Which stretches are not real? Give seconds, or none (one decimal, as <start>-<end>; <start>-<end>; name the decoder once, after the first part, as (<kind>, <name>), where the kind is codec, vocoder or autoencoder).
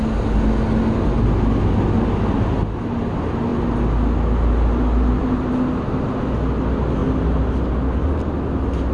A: none